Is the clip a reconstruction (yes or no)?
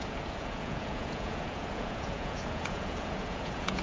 yes